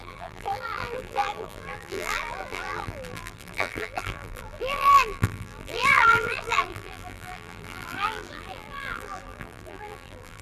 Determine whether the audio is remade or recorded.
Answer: remade